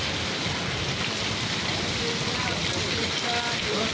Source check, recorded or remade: recorded